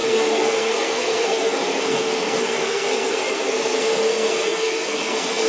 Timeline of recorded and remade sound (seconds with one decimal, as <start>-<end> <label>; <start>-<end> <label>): 0.0-5.5 remade